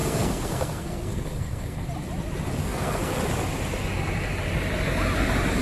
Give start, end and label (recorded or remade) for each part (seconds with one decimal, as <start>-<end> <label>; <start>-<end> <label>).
0.0-1.9 remade; 1.9-2.6 recorded; 2.6-3.2 remade; 3.2-5.6 recorded